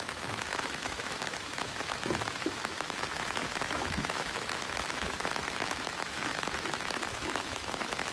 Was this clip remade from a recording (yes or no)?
yes